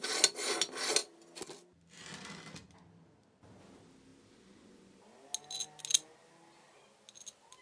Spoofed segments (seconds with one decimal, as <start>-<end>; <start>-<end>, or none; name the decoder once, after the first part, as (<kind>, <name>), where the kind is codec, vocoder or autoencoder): none